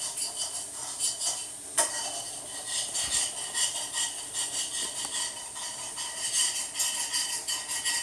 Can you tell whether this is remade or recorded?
recorded